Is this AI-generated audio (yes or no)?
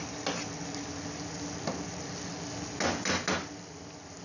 no